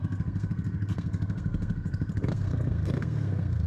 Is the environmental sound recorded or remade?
remade